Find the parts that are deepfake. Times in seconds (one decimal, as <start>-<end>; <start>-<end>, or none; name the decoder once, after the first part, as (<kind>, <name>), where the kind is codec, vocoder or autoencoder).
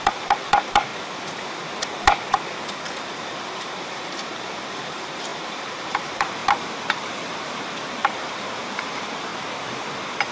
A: 0.0-0.9 (vocoder, BigVGAN v2); 3.0-9.3